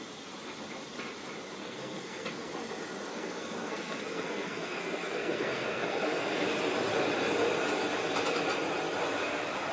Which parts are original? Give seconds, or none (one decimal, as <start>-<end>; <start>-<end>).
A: 0.0-1.6; 2.5-3.1; 6.5-9.7